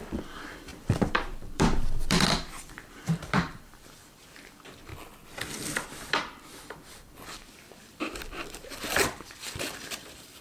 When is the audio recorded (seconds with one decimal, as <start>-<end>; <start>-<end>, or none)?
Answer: 4.9-6.1